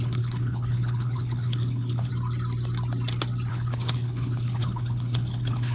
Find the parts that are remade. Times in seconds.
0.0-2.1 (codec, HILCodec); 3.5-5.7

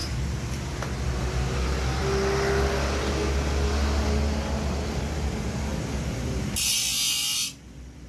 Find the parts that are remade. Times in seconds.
none

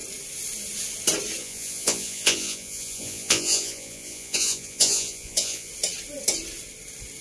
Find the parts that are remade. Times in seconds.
1.4-5.7 (vocoder, Vocos)

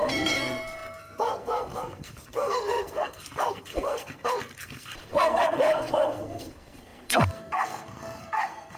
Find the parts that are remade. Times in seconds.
0.0-8.8 (codec, SNAC)

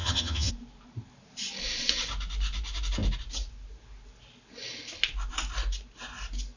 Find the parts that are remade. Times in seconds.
0.0-0.5 (vocoder, HiFi-GAN)

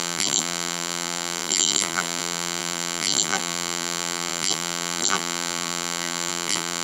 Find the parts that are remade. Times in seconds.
0.0-6.8 (vocoder, BigVGAN v2)